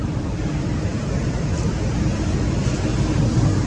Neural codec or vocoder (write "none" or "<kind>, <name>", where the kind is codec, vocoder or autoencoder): none